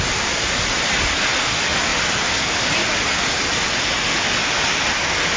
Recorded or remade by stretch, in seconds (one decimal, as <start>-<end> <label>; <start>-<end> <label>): 0.0-5.4 recorded